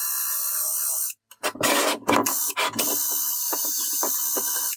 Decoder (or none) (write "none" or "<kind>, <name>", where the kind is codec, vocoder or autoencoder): none